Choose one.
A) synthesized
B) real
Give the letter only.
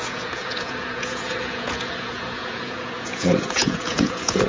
A